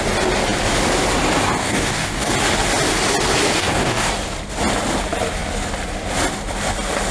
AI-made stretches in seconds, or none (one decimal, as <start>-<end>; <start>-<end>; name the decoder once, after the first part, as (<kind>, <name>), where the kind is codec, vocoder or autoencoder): 1.6-2.3 (codec, DAC); 3.6-4.1